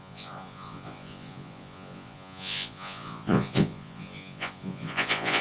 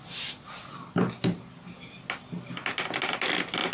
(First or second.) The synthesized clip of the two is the first